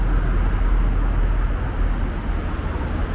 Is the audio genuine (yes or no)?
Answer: yes